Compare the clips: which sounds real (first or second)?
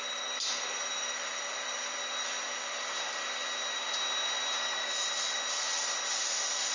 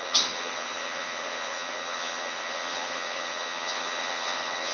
first